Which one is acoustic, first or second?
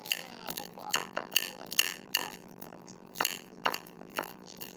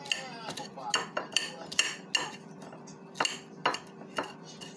second